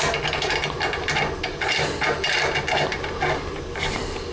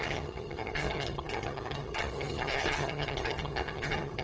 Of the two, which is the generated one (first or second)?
second